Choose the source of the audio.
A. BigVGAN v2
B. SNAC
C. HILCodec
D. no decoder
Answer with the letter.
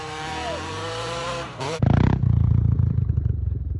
A